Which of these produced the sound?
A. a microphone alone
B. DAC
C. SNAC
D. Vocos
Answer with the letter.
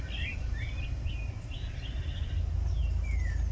A